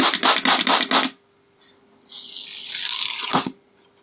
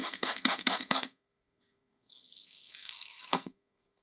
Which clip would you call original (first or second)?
first